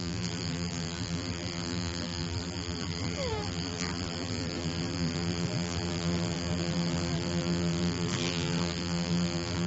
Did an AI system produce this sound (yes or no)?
yes